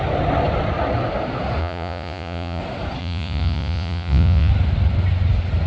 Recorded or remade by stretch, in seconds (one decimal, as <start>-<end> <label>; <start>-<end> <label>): 0.0-1.6 recorded; 1.6-2.6 remade; 2.6-3.0 recorded; 3.0-4.5 remade; 4.5-5.7 recorded

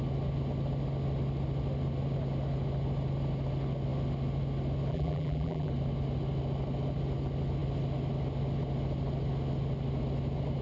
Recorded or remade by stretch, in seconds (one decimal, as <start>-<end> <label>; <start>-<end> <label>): 0.0-4.9 recorded; 4.9-5.7 remade; 5.7-10.6 recorded

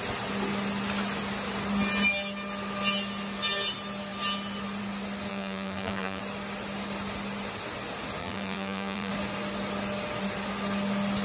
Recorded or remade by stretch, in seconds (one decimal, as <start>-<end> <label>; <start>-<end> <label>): 0.0-5.3 recorded; 5.3-6.2 remade; 6.2-8.2 recorded; 8.2-9.1 remade; 9.1-11.2 recorded

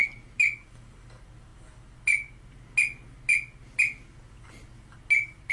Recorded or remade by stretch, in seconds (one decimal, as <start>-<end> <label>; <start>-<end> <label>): 0.0-5.5 recorded

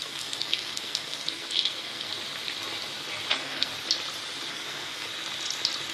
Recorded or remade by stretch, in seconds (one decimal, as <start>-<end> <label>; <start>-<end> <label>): 0.0-2.1 remade; 2.1-3.3 recorded; 3.3-3.7 remade; 3.7-4.5 recorded; 4.5-5.1 remade; 5.1-5.9 recorded

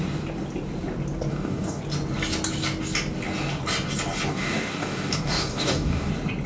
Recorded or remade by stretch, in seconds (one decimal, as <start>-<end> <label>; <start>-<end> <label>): 0.0-1.3 recorded; 1.3-1.8 remade; 1.8-4.3 recorded; 4.3-6.1 remade; 6.1-6.5 recorded

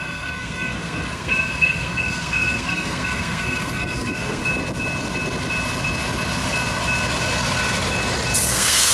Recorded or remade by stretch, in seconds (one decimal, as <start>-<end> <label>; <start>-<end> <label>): 0.0-4.4 remade; 4.4-8.5 recorded; 8.5-8.9 remade

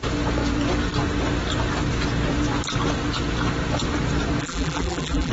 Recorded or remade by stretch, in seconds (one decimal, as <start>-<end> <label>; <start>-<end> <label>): 0.0-4.4 recorded; 4.4-5.3 remade